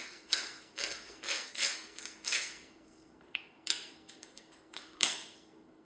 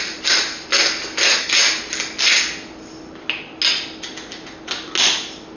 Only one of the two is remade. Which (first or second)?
first